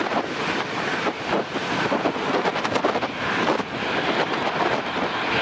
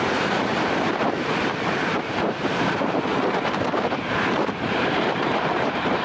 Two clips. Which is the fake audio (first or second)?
second